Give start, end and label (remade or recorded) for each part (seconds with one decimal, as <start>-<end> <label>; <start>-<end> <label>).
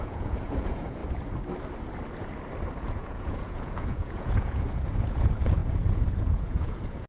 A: 0.0-1.0 remade; 1.0-2.8 recorded; 2.8-7.1 remade